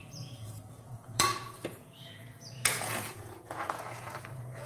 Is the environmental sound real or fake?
fake